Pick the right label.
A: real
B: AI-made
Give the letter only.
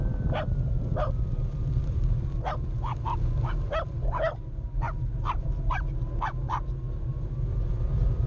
A